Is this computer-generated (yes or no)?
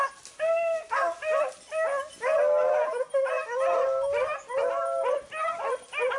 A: no